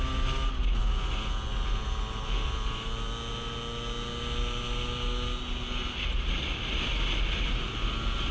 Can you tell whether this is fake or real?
real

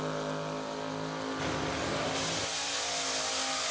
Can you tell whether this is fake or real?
real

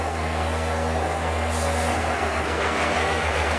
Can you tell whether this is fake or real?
fake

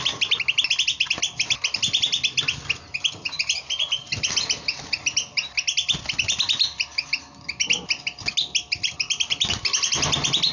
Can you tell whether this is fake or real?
real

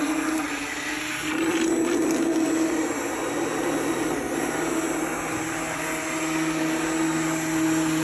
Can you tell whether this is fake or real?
real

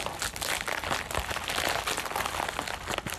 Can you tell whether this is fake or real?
real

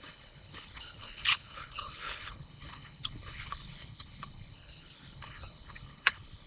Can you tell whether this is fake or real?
fake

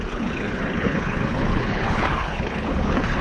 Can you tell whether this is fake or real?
fake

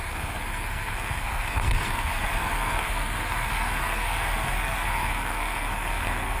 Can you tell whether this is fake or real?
fake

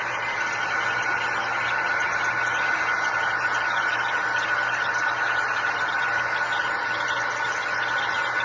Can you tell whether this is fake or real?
real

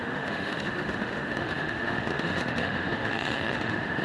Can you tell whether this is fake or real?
fake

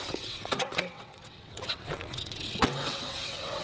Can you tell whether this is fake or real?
fake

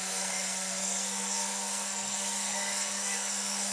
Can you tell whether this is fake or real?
fake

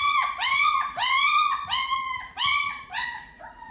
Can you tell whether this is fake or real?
fake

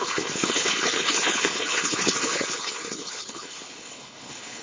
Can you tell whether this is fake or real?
fake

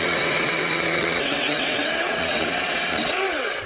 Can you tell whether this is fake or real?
fake